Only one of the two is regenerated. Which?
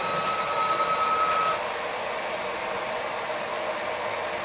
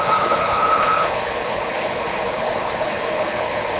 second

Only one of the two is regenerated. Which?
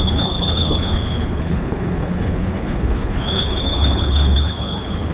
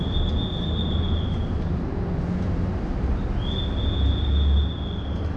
first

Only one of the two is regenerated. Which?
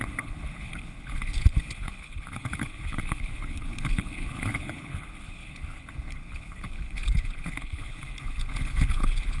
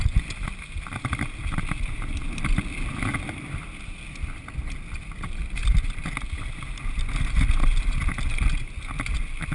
first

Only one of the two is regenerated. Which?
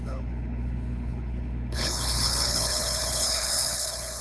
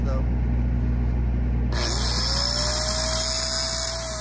first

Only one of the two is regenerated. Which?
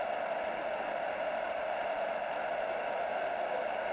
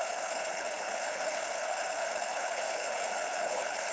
second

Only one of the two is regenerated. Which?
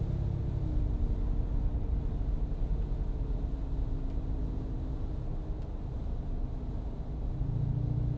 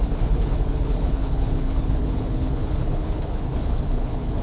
second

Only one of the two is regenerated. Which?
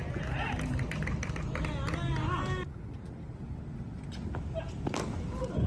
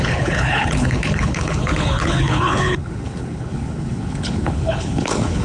second